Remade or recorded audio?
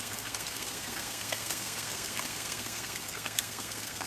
remade